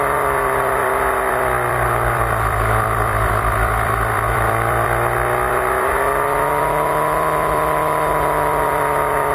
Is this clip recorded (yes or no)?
no